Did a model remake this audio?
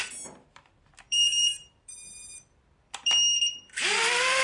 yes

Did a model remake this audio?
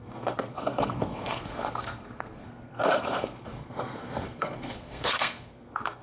yes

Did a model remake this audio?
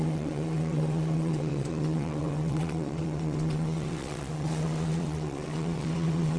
yes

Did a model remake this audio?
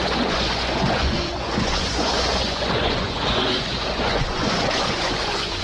yes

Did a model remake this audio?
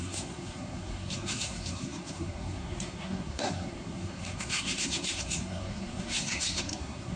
yes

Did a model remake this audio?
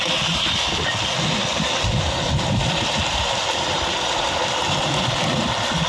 no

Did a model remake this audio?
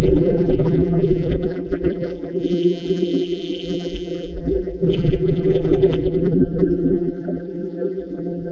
yes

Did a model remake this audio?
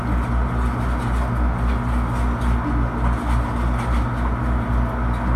no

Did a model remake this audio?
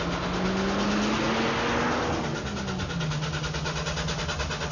no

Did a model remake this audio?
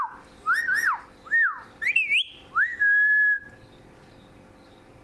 no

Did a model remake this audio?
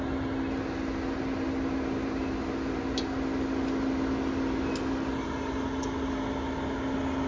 no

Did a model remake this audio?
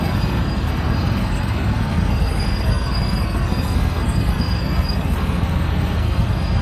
yes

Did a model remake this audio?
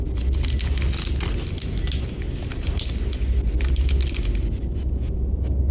no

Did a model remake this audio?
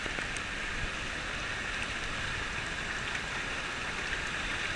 no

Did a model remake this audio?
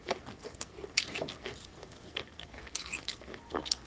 yes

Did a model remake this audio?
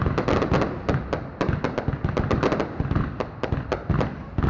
no